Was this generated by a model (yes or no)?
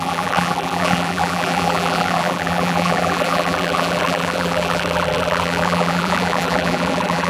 yes